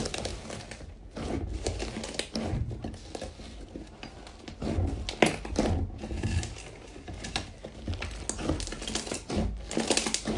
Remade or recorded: recorded